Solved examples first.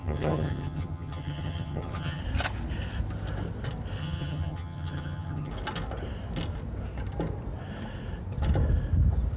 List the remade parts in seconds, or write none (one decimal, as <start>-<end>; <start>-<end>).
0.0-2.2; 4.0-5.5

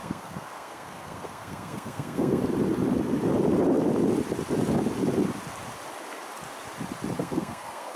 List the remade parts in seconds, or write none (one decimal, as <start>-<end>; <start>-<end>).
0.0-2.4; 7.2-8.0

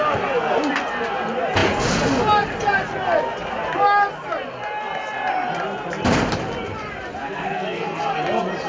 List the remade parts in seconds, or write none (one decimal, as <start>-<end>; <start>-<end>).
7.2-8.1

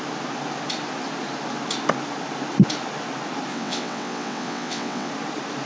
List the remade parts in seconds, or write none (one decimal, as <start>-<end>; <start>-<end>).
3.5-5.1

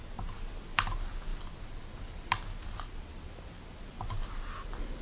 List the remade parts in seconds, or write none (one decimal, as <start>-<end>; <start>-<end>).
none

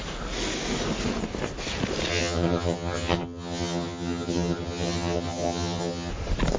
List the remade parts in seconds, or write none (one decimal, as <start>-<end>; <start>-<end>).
2.1-6.1